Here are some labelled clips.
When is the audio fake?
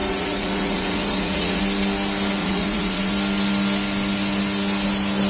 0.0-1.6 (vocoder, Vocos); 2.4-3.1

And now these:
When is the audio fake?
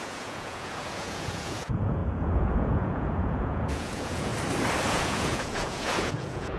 0.0-4.3 (vocoder, Vocos); 4.9-6.6